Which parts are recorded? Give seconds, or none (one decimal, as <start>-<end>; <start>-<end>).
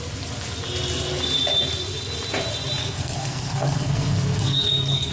0.0-2.8